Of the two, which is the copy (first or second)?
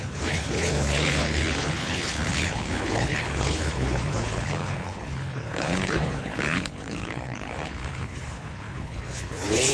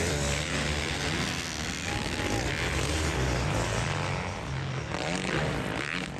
first